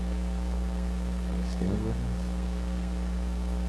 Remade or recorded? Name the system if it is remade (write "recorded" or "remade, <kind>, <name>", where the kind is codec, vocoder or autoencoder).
remade, codec, SNAC